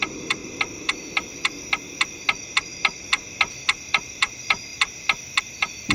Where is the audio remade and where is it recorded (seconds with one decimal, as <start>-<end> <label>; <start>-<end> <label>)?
0.0-0.4 remade; 0.4-3.9 recorded; 3.9-4.7 remade; 4.7-5.4 recorded; 5.4-5.9 remade